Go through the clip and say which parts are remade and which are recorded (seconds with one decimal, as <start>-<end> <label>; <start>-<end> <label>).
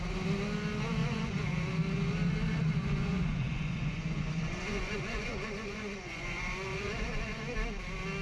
0.0-1.0 recorded; 1.0-1.7 remade; 1.7-2.8 recorded; 2.8-7.5 remade; 7.5-8.2 recorded